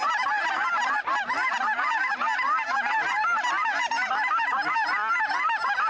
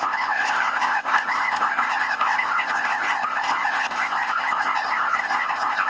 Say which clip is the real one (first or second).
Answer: first